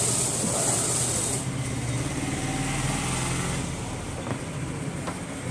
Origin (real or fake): real